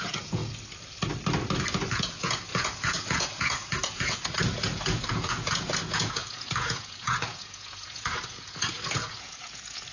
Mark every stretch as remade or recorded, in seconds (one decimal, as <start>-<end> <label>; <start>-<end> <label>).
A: 0.0-0.4 remade; 0.4-1.9 recorded; 1.9-9.9 remade